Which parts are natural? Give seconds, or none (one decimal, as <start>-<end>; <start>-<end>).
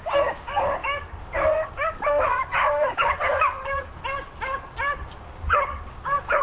3.9-5.2